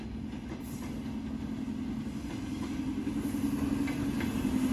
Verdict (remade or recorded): recorded